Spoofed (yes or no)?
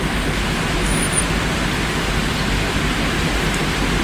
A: no